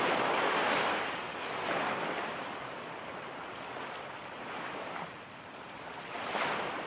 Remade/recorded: recorded